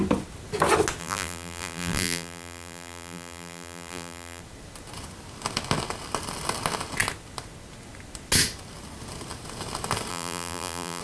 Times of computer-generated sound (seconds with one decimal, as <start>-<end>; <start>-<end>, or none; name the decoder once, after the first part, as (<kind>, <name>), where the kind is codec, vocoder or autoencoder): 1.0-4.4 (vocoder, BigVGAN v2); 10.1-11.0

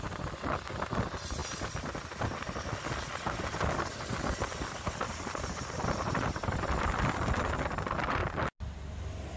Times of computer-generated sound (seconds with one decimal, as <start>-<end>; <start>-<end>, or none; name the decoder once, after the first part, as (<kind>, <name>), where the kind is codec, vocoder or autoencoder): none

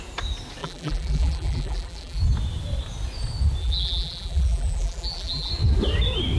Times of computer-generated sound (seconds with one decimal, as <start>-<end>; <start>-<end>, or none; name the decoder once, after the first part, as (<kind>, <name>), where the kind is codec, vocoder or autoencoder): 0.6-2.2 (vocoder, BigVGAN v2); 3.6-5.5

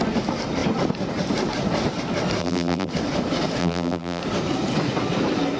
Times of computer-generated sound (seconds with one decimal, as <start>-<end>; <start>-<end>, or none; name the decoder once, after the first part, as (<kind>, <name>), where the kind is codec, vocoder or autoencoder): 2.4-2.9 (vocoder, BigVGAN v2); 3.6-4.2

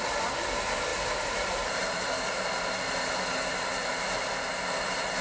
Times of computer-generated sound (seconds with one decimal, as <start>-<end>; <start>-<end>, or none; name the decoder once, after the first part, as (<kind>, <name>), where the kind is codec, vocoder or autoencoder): 0.9-2.3 (vocoder, BigVGAN v2)